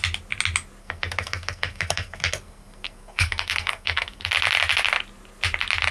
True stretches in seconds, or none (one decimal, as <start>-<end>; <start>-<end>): 0.0-0.8; 4.3-5.9